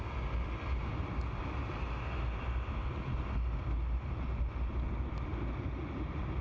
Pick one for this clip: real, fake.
real